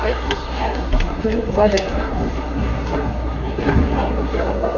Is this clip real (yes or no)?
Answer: no